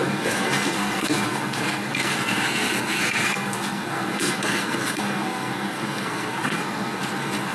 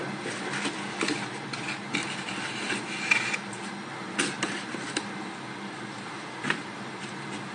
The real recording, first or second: second